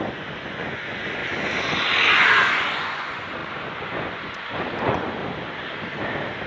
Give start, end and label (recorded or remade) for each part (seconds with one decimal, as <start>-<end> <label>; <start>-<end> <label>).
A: 0.0-1.2 remade; 1.2-2.1 recorded; 2.1-5.2 remade; 5.2-6.5 recorded

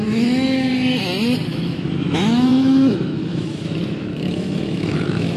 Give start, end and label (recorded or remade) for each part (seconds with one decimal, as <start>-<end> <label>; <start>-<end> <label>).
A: 0.0-0.7 remade; 0.7-1.5 recorded; 1.5-5.4 remade

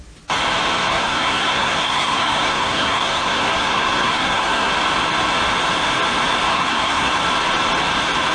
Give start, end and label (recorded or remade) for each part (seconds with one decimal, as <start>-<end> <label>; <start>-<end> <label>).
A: 0.0-0.9 recorded; 0.9-4.7 remade; 4.7-6.5 recorded; 6.5-7.1 remade; 7.1-8.3 recorded

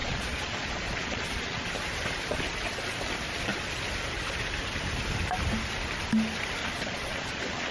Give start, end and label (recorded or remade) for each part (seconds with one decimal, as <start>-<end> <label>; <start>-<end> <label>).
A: 0.0-1.7 remade; 1.7-6.6 recorded; 6.6-7.7 remade

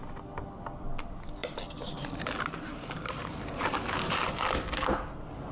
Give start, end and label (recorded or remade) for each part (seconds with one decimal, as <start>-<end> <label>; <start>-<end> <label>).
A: 0.0-1.4 recorded; 1.4-4.1 remade; 4.1-5.5 recorded